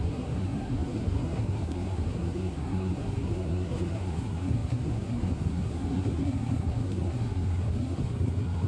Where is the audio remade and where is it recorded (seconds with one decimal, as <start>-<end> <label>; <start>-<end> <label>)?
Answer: 0.0-8.7 remade